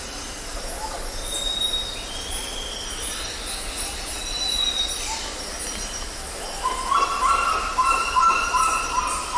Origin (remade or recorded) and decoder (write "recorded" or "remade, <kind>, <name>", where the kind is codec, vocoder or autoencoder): recorded